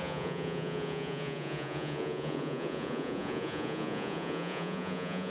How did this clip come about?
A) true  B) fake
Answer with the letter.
B